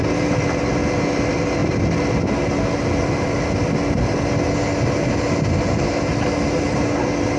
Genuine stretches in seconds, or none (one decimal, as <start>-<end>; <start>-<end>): 0.0-7.4